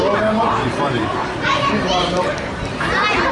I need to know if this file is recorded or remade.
remade